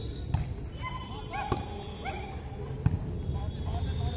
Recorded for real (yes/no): yes